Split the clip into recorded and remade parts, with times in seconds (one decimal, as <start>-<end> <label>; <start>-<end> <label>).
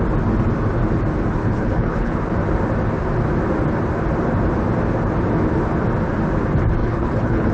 0.0-1.4 recorded; 1.4-2.2 remade; 2.2-6.8 recorded; 6.8-7.5 remade